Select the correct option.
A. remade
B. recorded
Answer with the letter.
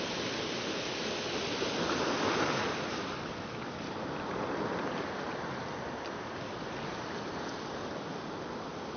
B